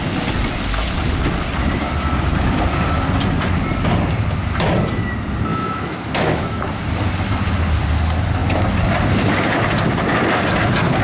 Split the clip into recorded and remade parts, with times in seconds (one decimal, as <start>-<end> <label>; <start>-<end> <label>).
0.0-5.5 recorded; 5.5-6.6 remade; 6.6-11.0 recorded